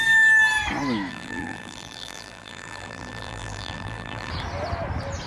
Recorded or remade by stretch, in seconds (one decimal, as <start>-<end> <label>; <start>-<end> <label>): 0.0-1.1 recorded; 1.1-4.3 remade; 4.3-5.3 recorded